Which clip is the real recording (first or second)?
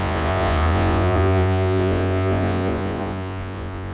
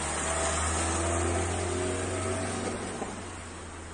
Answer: second